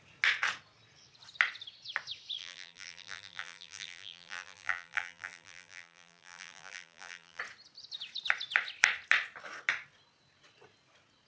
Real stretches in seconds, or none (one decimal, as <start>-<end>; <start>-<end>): 0.0-2.4; 7.4-11.3